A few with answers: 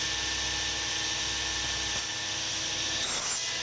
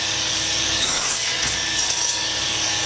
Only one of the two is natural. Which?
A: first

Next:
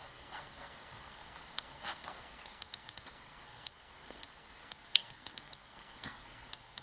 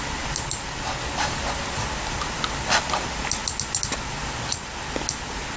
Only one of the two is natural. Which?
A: second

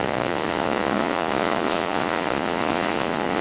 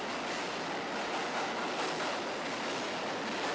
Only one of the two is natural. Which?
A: second